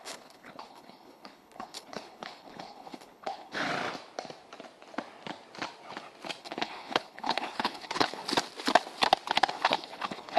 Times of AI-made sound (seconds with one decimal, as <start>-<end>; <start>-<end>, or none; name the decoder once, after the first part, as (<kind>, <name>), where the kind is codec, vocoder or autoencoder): 0.0-3.7 (codec, HILCodec); 6.4-8.2; 9.5-10.4